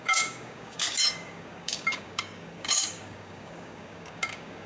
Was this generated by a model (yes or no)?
yes